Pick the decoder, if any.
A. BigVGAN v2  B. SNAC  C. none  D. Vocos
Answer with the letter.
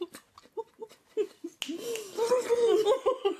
C